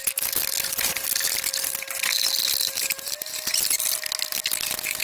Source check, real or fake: real